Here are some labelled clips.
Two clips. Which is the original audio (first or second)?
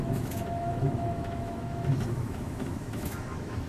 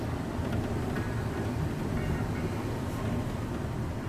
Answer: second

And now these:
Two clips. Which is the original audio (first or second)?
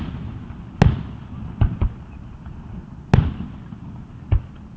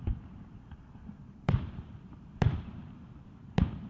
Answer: first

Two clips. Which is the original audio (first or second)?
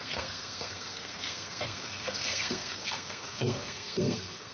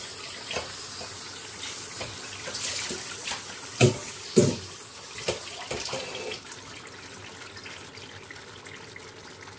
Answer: second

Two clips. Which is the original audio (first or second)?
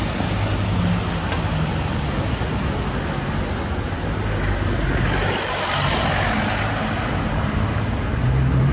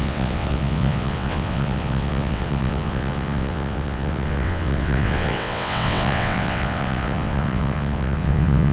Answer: first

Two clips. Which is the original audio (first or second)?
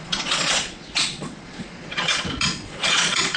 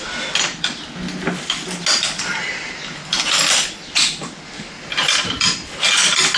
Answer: second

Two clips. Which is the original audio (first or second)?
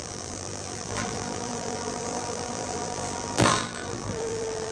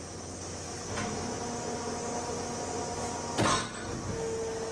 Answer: second